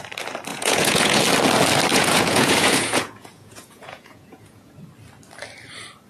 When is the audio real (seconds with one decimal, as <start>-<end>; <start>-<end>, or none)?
0.0-0.5; 1.2-1.9; 4.7-6.1